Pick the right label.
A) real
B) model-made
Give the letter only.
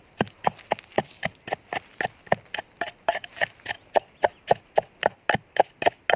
A